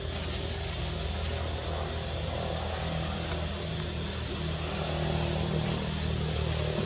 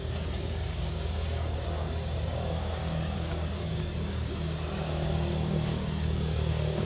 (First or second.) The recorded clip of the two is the first